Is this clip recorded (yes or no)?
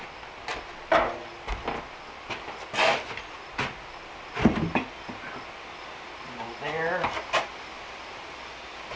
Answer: yes